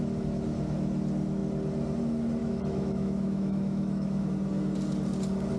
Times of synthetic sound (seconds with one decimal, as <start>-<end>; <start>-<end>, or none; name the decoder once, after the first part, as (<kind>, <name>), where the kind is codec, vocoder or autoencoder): 2.4-4.3 (autoencoder, DAC-VAE)